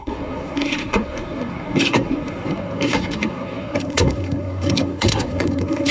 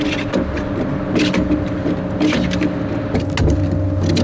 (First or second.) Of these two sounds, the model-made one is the first